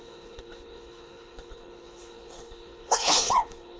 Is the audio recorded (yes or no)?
no